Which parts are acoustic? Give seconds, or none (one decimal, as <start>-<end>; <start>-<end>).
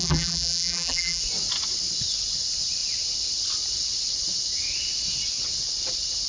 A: 1.2-6.3